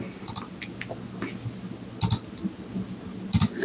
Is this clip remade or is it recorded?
recorded